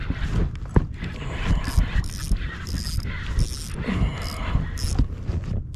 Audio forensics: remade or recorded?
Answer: recorded